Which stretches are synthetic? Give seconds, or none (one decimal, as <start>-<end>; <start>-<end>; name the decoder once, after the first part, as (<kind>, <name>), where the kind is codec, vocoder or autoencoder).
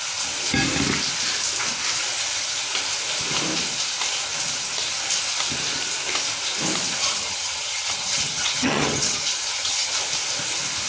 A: 7.0-9.9 (vocoder, HiFi-GAN)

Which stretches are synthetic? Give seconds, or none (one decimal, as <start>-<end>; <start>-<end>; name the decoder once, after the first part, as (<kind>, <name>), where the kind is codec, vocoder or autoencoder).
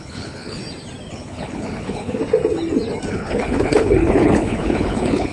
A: 0.0-0.6 (codec, HILCodec); 1.1-2.2; 3.1-5.3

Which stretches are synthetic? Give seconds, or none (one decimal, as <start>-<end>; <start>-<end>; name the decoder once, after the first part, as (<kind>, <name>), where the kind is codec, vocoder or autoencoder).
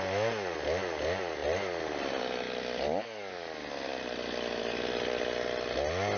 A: none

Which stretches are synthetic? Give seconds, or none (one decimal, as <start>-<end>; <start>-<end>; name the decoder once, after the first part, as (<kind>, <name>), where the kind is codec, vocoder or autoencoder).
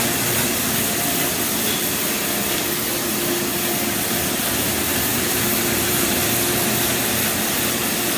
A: 5.1-6.3 (vocoder, BigVGAN v2)